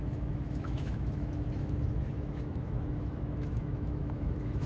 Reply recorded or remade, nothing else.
remade